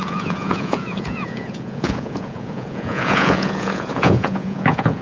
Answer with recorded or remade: remade